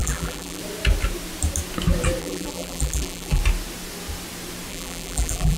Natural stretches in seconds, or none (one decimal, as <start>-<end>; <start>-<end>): 0.6-2.2; 3.4-4.7